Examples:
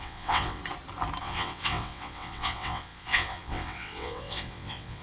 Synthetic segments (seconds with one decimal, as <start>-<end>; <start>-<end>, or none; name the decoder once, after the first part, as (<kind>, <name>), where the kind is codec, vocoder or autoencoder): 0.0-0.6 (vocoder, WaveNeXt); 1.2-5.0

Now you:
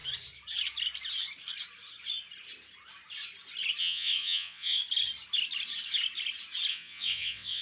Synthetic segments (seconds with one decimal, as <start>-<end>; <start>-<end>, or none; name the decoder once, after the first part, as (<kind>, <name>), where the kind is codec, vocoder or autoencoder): 3.8-4.8 (vocoder, WaveNeXt); 6.7-7.6

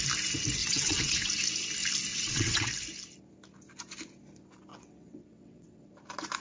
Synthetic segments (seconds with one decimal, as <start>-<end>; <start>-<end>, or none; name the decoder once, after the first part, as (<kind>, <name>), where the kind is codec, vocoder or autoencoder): 0.6-1.4 (vocoder, WaveNeXt); 2.1-2.7; 4.7-5.9

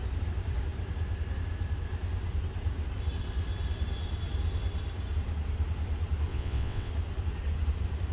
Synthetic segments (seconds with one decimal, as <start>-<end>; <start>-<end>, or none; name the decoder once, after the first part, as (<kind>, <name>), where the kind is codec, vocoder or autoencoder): 6.3-6.9 (vocoder, WaveNeXt)

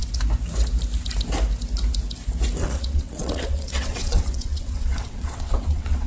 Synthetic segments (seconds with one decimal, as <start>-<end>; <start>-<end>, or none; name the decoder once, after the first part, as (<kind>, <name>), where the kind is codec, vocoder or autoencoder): 2.6-6.1 (vocoder, WaveNeXt)

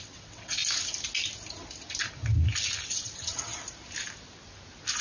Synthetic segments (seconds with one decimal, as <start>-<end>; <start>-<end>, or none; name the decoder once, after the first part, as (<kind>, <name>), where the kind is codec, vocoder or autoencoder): 0.0-0.6 (vocoder, WaveNeXt); 2.9-3.5

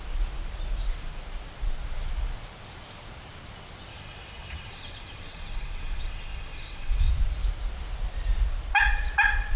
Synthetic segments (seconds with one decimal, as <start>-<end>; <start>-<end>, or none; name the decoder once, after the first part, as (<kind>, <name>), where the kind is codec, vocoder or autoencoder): 3.9-7.1 (vocoder, WaveNeXt)

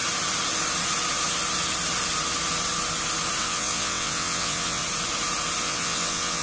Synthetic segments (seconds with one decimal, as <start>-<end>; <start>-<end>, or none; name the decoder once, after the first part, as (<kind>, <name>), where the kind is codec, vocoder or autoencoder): 3.4-4.8 (vocoder, WaveNeXt); 5.6-6.4